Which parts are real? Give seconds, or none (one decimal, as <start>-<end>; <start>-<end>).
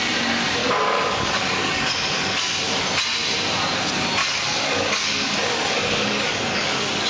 0.0-0.6; 2.4-4.2